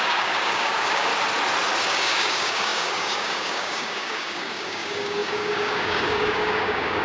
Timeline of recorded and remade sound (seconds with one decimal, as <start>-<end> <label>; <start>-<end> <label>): 0.0-1.1 remade; 1.1-1.8 recorded; 1.8-7.0 remade